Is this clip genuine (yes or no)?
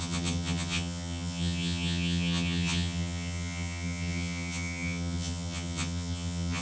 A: no